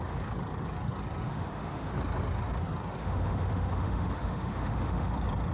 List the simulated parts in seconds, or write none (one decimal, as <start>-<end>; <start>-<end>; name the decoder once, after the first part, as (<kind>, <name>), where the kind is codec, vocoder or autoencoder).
1.3-1.9 (autoencoder, DAC-VAE); 3.0-5.1